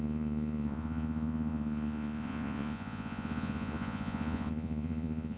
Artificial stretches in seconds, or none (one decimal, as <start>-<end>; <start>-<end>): 0.0-5.4